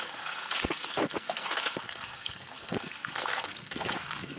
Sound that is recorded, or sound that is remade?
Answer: remade